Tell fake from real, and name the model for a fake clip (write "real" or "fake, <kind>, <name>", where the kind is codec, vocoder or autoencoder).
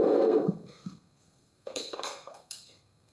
fake, codec, SNAC